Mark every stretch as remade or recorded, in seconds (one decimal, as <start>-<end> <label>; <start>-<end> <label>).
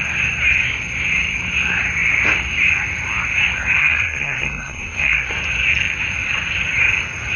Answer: 0.0-3.8 recorded; 3.8-5.3 remade; 5.3-7.4 recorded